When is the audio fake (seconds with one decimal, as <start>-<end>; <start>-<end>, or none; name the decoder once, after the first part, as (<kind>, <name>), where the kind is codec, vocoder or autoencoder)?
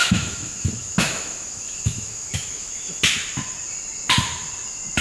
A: 0.0-3.0 (autoencoder, DAC-VAE)